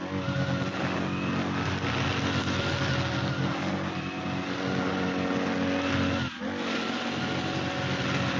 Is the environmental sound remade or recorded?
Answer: recorded